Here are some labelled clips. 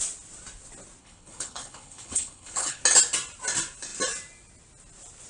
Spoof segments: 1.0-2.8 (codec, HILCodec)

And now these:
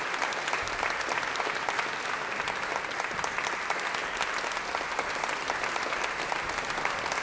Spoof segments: none

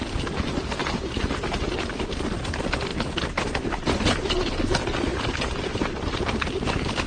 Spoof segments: 0.8-1.9 (vocoder, BigVGAN v2); 2.9-4.6; 5.1-5.9

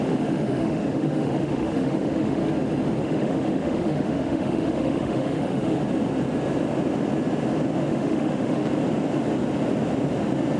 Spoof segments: 0.0-2.4 (autoencoder, DAC-VAE); 3.0-5.8; 7.9-8.6